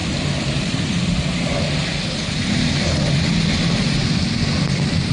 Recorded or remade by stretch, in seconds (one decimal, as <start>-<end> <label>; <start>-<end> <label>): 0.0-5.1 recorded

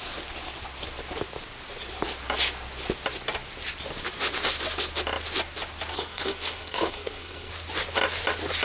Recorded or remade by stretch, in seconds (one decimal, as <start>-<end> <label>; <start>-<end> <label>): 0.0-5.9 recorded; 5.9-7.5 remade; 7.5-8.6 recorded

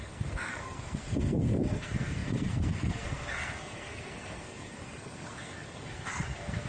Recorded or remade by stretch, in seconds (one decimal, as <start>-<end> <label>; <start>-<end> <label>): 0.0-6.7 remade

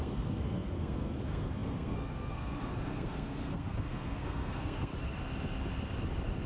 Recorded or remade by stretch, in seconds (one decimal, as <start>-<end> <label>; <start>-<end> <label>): 0.0-4.9 remade; 4.9-6.5 recorded

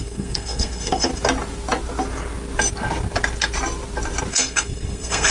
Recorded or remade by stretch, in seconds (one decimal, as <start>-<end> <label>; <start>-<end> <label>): 0.0-1.1 remade; 1.1-4.3 recorded; 4.3-5.3 remade

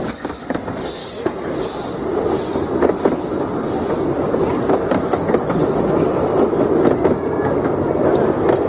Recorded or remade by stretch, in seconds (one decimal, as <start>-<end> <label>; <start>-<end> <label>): 0.0-8.7 recorded